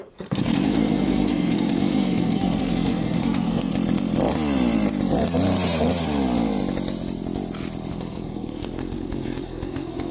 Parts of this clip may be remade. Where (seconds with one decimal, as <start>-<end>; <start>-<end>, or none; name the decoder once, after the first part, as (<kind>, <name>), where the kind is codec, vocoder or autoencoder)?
0.0-3.7 (codec, SNAC); 7.9-10.1